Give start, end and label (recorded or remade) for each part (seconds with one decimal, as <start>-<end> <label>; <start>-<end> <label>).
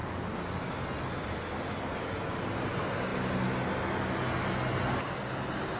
0.0-5.8 recorded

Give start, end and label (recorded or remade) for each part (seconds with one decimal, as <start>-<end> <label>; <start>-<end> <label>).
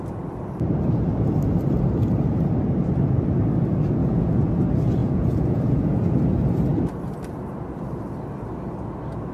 0.0-4.0 recorded; 4.0-4.5 remade; 4.5-5.0 recorded; 5.0-6.2 remade; 6.2-9.3 recorded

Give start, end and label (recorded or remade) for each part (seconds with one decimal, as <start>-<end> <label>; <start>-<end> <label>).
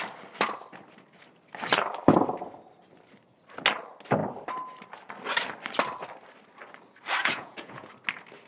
0.0-7.2 recorded; 7.2-7.9 remade; 7.9-8.5 recorded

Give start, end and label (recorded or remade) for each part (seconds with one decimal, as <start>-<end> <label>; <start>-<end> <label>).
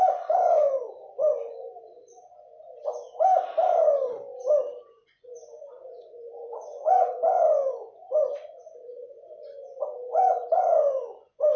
0.0-2.9 remade; 2.9-4.8 recorded; 4.8-11.6 remade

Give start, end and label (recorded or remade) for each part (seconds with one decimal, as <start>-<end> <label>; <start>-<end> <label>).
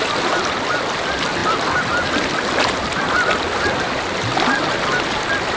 0.0-5.6 recorded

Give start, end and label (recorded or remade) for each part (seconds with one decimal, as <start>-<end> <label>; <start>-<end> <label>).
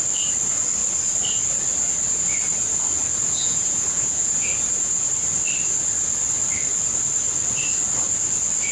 0.0-3.4 recorded; 3.4-5.1 remade; 5.1-8.7 recorded